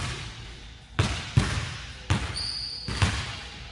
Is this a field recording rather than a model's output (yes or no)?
yes